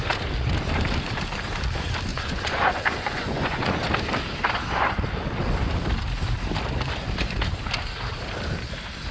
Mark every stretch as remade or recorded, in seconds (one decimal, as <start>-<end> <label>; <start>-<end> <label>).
0.0-2.1 recorded; 2.1-3.8 remade; 3.8-9.1 recorded